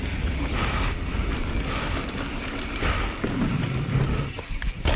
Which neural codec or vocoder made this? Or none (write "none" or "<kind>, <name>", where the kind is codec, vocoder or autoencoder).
none